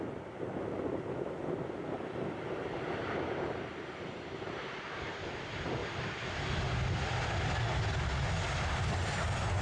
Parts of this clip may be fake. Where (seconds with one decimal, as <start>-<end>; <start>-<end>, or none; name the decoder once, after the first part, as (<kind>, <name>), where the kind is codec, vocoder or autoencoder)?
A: 2.6-5.3 (vocoder, BigVGAN v2); 5.8-6.3

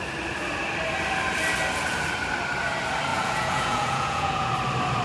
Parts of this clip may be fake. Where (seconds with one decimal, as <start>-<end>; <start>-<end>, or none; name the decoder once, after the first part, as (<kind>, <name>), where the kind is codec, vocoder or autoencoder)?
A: 3.1-4.5 (vocoder, Vocos)

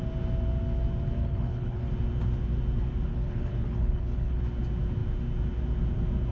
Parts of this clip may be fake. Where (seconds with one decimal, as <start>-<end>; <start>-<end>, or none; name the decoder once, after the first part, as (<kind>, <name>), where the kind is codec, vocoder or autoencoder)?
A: 1.2-1.9 (codec, HILCodec); 3.1-4.4

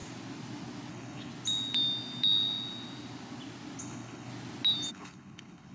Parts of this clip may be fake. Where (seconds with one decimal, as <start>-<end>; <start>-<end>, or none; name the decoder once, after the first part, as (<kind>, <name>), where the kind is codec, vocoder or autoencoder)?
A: 0.9-1.3 (codec, HILCodec); 3.8-4.3; 4.9-5.7

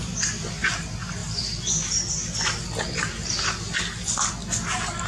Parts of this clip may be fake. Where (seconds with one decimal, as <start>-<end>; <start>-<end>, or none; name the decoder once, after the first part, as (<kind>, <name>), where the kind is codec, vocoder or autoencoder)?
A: none